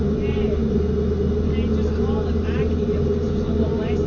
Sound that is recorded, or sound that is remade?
recorded